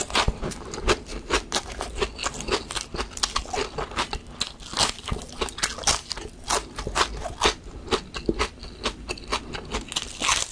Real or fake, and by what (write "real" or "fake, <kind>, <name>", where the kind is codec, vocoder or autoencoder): real